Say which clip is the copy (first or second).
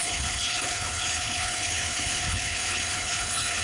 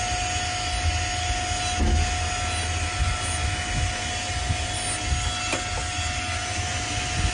first